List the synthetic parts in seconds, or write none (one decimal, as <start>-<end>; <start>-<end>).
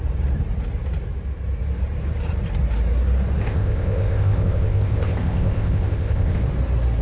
3.4-6.4